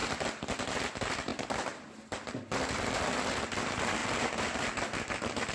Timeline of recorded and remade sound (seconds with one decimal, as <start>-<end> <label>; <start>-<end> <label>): 0.0-4.0 recorded; 4.0-5.1 remade; 5.1-5.5 recorded